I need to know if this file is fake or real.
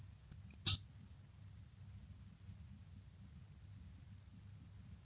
real